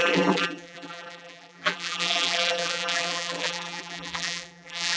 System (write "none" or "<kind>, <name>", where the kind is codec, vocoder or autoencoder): vocoder, BigVGAN v2